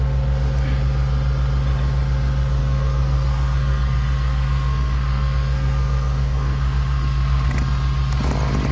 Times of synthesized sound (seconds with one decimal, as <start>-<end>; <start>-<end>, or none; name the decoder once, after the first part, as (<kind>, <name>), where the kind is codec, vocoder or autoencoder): 2.6-7.5 (codec, SNAC)